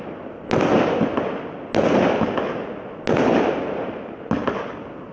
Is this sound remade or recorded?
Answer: recorded